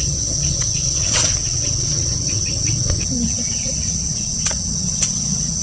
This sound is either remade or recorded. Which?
remade